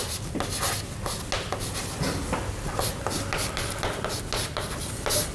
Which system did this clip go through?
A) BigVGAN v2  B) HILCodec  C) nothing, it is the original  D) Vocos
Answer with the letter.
C